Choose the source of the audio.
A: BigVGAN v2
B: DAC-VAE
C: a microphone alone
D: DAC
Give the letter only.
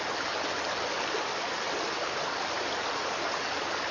C